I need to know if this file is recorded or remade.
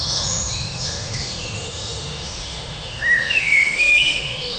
remade